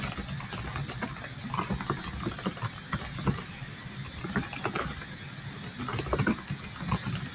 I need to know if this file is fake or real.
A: real